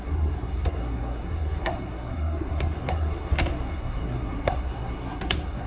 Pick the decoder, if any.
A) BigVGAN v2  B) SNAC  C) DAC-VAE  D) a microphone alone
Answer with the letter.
B